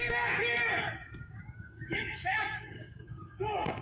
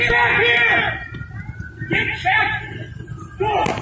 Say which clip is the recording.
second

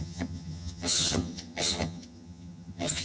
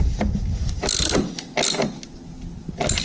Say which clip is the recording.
second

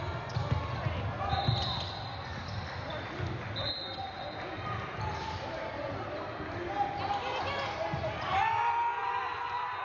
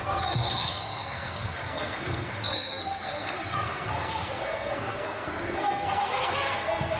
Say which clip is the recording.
first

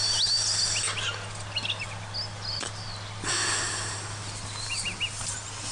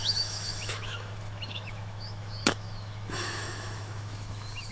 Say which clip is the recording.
first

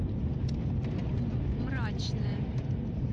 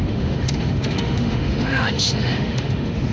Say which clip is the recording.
first